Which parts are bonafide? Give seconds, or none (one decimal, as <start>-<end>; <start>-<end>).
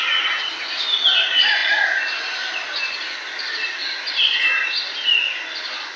0.0-6.0